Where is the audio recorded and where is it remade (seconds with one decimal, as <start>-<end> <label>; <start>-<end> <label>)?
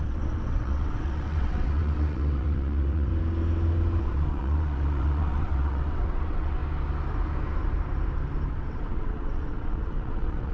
0.0-3.1 remade; 3.1-4.0 recorded; 4.0-6.6 remade; 6.6-8.5 recorded; 8.5-10.5 remade